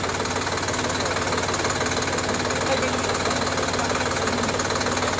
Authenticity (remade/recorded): recorded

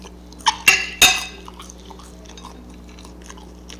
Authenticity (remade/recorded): recorded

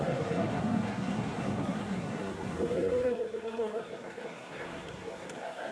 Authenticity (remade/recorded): remade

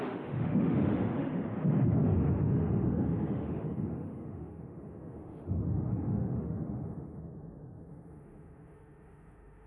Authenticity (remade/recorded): remade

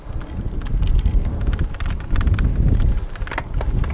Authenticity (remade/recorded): recorded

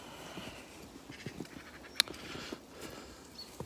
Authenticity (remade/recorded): recorded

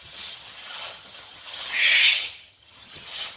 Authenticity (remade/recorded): remade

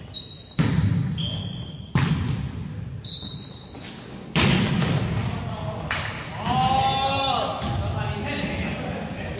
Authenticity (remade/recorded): recorded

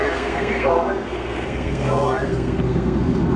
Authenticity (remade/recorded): remade